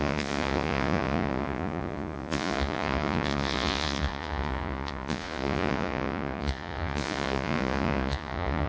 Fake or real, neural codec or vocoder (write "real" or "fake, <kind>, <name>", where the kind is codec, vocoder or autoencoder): fake, vocoder, Vocos